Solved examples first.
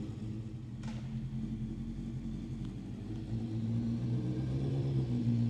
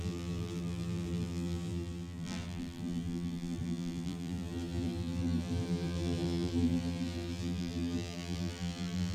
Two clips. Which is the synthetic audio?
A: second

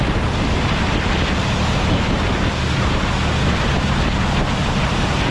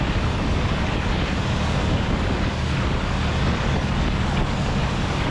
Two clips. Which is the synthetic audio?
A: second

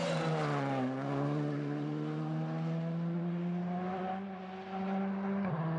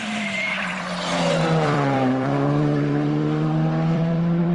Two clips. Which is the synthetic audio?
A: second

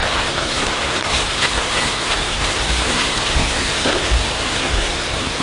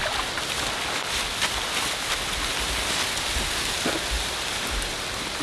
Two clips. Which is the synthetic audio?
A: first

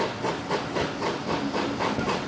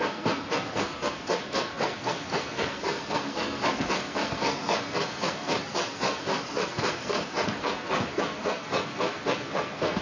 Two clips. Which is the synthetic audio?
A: second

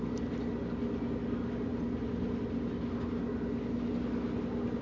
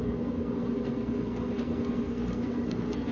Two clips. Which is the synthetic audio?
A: second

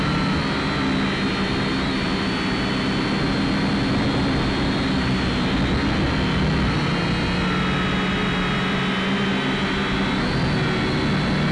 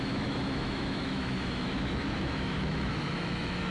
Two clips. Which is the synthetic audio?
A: second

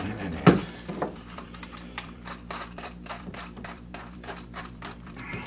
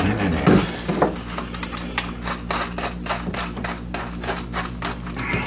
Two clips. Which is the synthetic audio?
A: first